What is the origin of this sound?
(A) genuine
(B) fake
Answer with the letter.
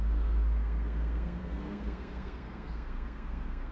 B